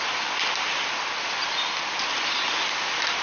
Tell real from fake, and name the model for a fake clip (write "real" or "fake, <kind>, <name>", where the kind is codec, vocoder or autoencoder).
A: real